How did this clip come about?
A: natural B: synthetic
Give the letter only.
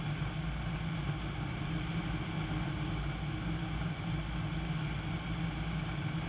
A